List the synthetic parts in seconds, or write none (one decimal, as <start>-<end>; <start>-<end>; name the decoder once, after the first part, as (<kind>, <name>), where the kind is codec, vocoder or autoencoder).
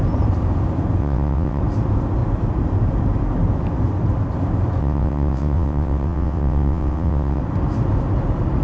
1.0-1.6 (vocoder, WaveNeXt); 4.8-7.4